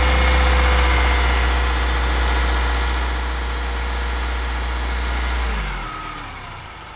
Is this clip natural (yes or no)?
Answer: yes